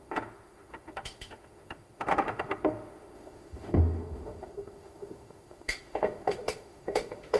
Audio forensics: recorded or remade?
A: remade